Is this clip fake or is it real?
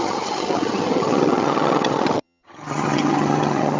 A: fake